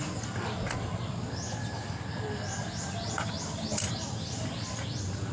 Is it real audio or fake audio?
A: real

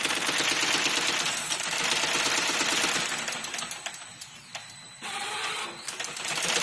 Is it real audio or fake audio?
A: real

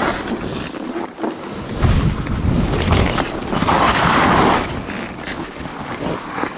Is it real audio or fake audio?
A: real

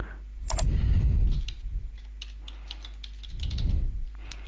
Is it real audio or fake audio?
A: real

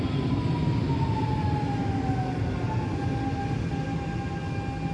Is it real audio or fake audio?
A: real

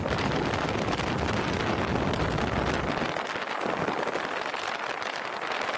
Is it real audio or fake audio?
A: real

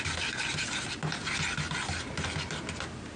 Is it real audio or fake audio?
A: real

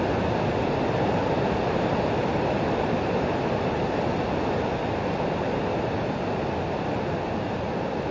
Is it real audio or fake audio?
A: real